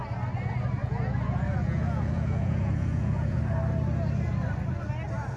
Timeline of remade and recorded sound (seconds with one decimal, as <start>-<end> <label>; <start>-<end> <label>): 0.0-0.8 recorded; 0.8-3.4 remade; 3.4-5.4 recorded

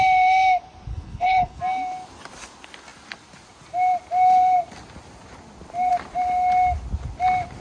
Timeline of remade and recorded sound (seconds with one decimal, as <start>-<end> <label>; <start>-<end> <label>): 0.0-0.9 recorded; 0.9-1.6 remade; 1.6-7.6 recorded